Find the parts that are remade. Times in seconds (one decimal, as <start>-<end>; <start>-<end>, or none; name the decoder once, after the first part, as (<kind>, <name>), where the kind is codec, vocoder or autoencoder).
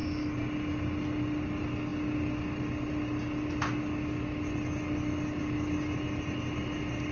none